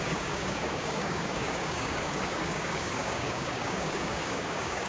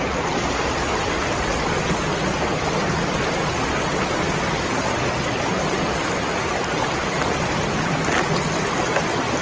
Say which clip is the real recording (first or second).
second